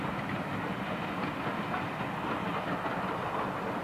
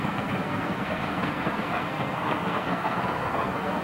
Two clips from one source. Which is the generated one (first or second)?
second